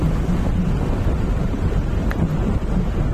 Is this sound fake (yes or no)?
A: no